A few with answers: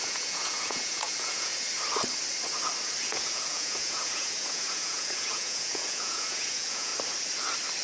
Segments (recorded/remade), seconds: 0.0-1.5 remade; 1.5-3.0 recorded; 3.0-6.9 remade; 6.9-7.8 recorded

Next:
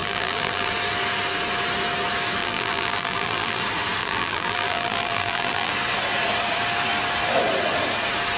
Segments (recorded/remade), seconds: 0.0-0.7 remade; 0.7-2.4 recorded; 2.4-3.6 remade; 3.6-4.0 recorded; 4.0-5.7 remade; 5.7-8.4 recorded

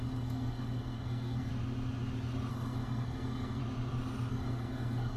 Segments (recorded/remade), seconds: 0.0-1.5 remade; 1.5-2.5 recorded; 2.5-3.6 remade; 3.6-4.3 recorded; 4.3-5.2 remade